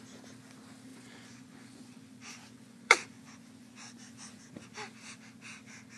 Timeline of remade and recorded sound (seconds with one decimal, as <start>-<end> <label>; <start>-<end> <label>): 0.0-0.9 recorded; 0.9-4.5 remade; 4.5-6.0 recorded

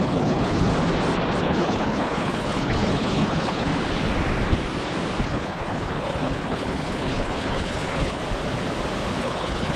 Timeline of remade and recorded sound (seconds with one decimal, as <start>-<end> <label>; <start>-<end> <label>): 0.0-0.7 remade; 0.7-1.4 recorded; 1.4-3.7 remade; 3.7-5.2 recorded; 5.2-8.2 remade; 8.2-9.2 recorded; 9.2-9.8 remade

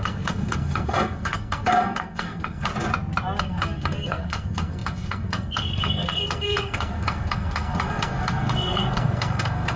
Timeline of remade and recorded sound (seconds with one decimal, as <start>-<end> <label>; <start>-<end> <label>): 0.0-2.7 remade; 2.7-3.4 recorded; 3.4-9.8 remade

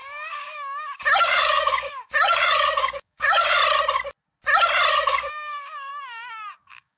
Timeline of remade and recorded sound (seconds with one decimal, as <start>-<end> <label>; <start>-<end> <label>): 0.0-3.6 remade; 3.6-4.9 recorded; 4.9-5.9 remade; 5.9-6.5 recorded; 6.5-7.0 remade